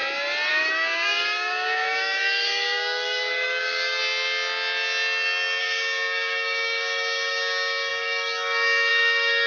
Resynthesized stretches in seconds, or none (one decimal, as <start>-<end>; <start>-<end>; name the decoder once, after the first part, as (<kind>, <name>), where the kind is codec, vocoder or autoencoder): 0.5-4.0 (codec, DAC); 5.6-9.5